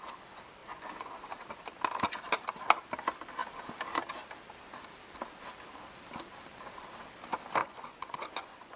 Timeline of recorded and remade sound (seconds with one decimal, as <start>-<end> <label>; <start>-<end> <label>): 0.0-0.6 recorded; 0.6-1.1 remade; 1.1-7.6 recorded; 7.6-8.8 remade